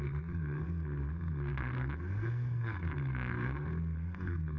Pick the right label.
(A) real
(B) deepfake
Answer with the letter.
B